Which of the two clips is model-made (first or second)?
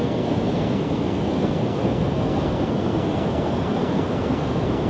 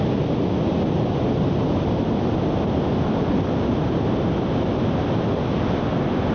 first